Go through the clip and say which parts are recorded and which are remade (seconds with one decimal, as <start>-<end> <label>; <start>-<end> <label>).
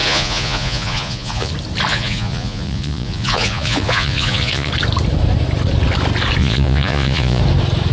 0.0-1.5 remade; 1.5-1.9 recorded; 1.9-4.7 remade; 4.7-6.4 recorded; 6.4-7.4 remade; 7.4-7.9 recorded